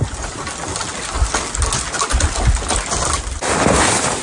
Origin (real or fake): real